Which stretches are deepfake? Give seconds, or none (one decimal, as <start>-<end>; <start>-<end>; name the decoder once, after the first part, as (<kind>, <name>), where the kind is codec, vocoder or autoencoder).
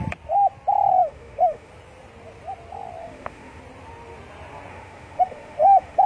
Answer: 0.9-1.7 (autoencoder, DAC-VAE); 3.0-3.6; 4.7-6.1